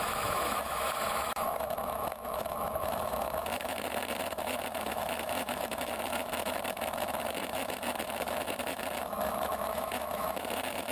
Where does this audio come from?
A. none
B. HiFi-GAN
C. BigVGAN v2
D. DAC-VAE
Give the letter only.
D